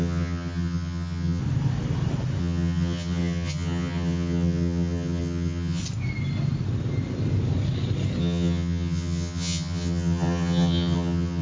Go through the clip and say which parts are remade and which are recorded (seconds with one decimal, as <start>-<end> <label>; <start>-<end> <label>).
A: 0.0-1.4 remade; 1.4-2.4 recorded; 2.4-5.8 remade; 5.8-8.2 recorded; 8.2-11.4 remade